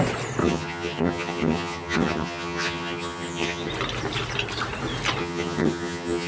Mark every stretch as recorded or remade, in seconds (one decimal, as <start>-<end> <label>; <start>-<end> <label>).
0.0-0.4 recorded; 0.4-3.7 remade; 3.7-5.2 recorded; 5.2-6.3 remade